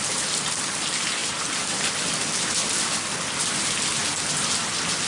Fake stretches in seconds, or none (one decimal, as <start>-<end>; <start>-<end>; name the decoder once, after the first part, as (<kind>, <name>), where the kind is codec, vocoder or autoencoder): none